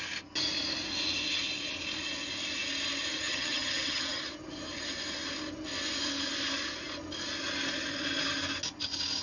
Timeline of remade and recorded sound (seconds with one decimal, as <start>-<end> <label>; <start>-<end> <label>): 0.0-3.1 recorded; 3.1-4.3 remade; 4.3-9.2 recorded